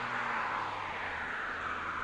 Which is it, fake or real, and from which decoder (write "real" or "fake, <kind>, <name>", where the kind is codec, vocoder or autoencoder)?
real